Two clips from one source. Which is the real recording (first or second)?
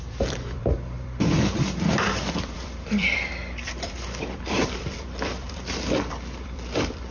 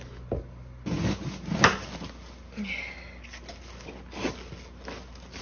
second